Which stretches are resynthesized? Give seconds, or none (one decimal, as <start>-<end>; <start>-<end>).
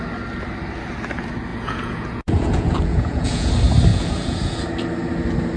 1.5-3.5; 3.9-4.6